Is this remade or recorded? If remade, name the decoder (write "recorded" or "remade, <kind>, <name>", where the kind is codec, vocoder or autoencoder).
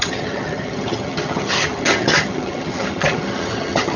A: remade, vocoder, HiFi-GAN